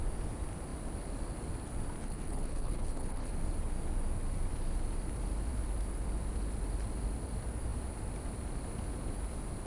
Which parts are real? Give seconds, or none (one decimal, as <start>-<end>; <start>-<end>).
0.0-2.0; 3.3-9.7